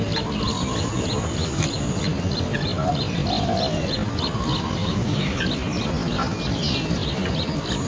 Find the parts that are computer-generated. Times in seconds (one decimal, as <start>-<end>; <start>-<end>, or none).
4.8-5.4